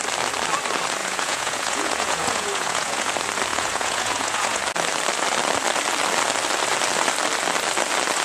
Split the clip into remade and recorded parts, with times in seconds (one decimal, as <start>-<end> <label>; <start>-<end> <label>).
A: 0.0-1.0 recorded; 1.0-3.1 remade; 3.1-3.5 recorded; 3.5-4.6 remade; 4.6-8.2 recorded